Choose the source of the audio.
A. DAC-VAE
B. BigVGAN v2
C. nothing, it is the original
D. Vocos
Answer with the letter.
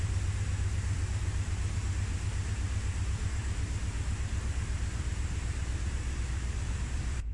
B